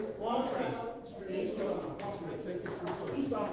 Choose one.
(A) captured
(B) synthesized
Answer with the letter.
B